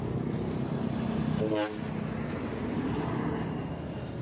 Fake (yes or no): no